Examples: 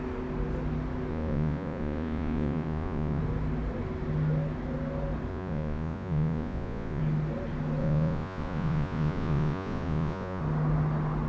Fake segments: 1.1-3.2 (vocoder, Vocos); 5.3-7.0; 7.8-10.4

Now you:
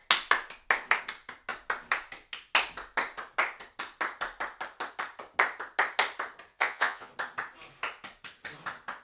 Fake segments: 6.5-7.1 (vocoder, Vocos)

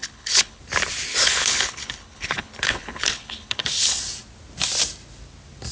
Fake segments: 0.0-0.6 (codec, HILCodec); 1.1-4.0

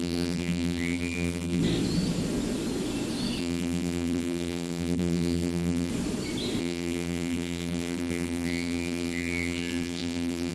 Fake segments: 0.0-1.6 (vocoder, BigVGAN v2); 3.4-5.9; 6.6-10.5